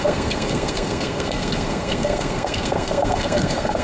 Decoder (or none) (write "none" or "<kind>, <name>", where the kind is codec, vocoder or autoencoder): codec, SNAC